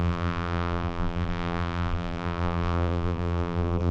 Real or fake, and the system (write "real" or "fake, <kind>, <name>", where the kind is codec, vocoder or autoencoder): fake, vocoder, BigVGAN v2